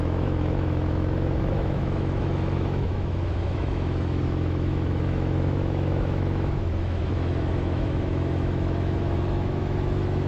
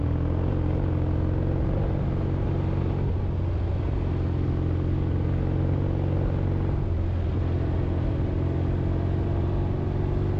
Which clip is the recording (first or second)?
second